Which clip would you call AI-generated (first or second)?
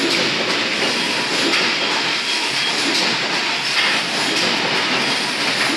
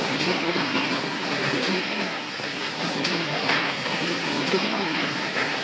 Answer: second